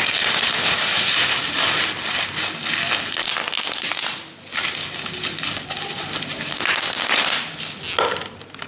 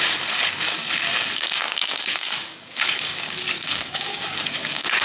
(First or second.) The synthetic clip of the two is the second